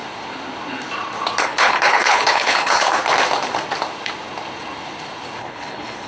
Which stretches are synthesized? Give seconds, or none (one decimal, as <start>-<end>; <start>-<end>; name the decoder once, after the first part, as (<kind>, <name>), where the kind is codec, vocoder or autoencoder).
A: 1.4-3.0 (codec, HILCodec); 5.4-6.1